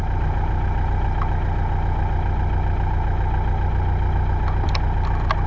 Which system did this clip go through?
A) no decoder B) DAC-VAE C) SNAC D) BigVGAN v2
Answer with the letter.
A